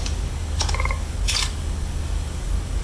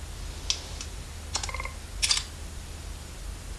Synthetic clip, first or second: first